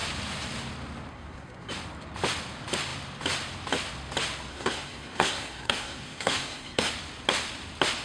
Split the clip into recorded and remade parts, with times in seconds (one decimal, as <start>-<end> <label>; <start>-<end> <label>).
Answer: 0.0-1.1 recorded; 1.1-1.7 remade; 1.7-4.5 recorded; 4.5-6.9 remade; 6.9-8.0 recorded